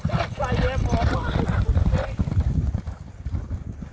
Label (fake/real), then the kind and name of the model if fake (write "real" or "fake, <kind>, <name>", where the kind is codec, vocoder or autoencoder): real